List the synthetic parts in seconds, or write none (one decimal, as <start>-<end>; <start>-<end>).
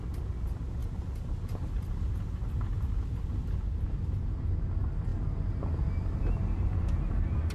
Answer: none